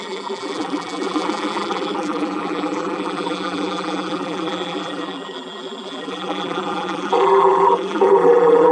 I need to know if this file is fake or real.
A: fake